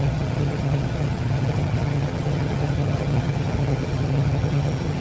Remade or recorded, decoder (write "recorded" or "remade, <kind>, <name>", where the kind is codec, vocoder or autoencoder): remade, vocoder, HiFi-GAN